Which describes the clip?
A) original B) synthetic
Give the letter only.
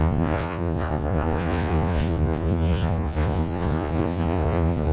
B